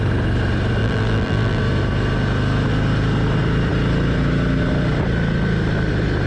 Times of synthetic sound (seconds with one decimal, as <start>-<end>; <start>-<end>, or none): 0.8-1.6